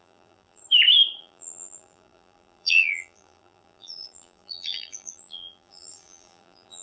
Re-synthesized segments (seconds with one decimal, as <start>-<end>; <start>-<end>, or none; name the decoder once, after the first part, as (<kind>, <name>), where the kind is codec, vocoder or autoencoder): 0.0-0.6 (vocoder, BigVGAN v2); 1.2-6.8